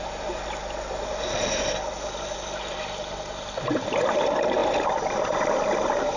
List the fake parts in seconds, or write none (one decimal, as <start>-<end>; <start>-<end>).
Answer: none